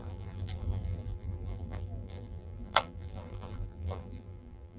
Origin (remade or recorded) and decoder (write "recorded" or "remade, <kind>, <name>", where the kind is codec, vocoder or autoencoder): remade, vocoder, BigVGAN v2